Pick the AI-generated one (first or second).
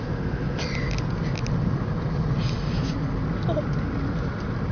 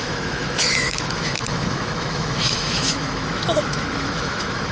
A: second